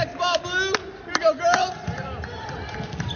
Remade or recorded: recorded